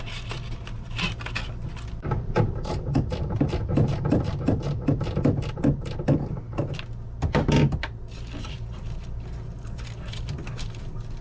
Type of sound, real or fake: real